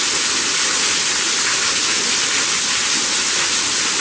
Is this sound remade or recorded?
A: recorded